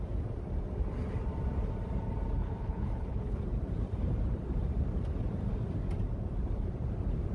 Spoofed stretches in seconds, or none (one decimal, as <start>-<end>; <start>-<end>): 2.4-3.4